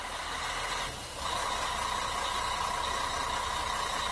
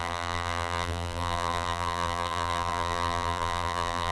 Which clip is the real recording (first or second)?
first